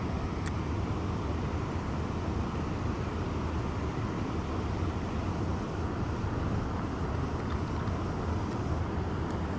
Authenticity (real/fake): real